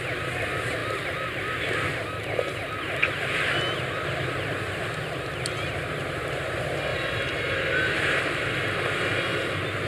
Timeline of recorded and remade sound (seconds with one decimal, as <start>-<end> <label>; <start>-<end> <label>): 0.0-6.9 recorded; 6.9-8.2 remade; 8.2-9.9 recorded